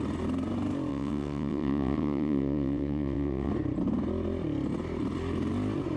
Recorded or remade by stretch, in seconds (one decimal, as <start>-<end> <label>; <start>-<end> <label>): 0.0-0.9 recorded; 0.9-3.5 remade; 3.5-6.0 recorded